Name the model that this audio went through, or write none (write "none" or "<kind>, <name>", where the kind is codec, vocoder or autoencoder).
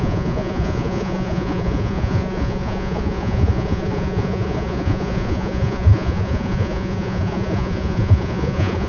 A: vocoder, Vocos